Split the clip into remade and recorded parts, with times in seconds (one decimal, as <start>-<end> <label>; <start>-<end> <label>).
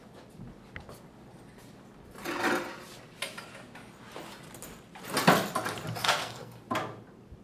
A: 0.0-6.0 recorded; 6.0-6.6 remade; 6.6-7.4 recorded